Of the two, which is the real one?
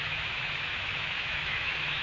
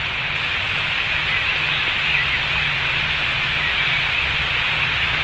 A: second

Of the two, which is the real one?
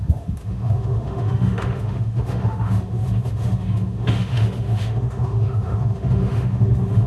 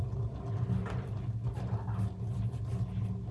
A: second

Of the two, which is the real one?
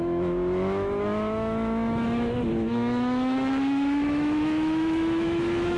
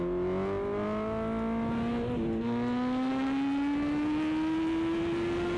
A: second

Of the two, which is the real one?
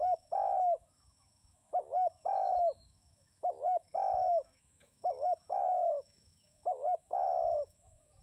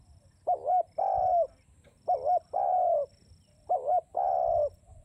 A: second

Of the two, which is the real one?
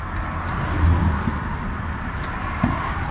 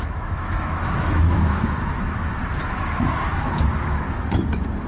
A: first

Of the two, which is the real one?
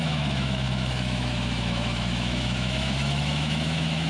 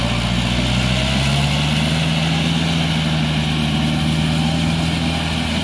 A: second